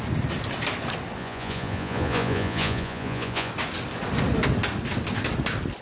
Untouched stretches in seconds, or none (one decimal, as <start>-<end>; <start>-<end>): 0.0-1.2; 3.5-5.8